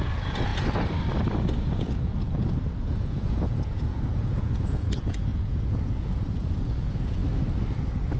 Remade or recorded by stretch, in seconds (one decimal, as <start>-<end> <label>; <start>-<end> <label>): 0.0-0.5 remade; 0.5-1.5 recorded; 1.5-7.2 remade; 7.2-8.2 recorded